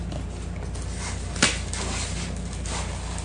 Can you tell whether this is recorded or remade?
recorded